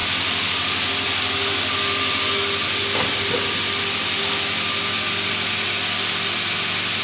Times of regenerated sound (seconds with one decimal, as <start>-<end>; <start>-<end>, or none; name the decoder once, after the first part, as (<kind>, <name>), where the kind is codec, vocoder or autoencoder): none